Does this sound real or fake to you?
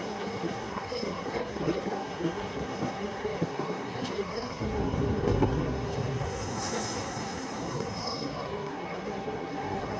fake